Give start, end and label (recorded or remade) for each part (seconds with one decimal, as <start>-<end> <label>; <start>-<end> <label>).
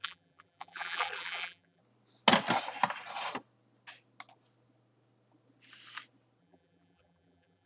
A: 0.0-1.8 remade; 1.8-6.4 recorded; 6.4-7.7 remade